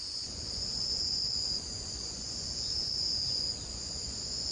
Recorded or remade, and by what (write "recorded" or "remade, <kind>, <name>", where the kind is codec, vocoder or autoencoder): remade, vocoder, Vocos